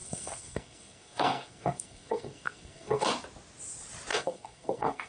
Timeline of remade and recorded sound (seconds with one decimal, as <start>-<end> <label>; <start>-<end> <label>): 0.0-3.1 remade; 3.1-4.1 recorded; 4.1-5.1 remade